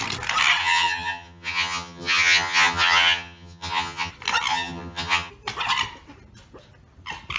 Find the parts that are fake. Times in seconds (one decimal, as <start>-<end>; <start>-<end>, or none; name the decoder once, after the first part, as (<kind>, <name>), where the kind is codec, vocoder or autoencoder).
0.6-4.1 (vocoder, HiFi-GAN); 4.5-5.3